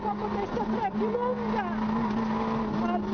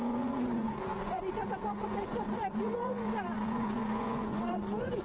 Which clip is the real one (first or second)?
first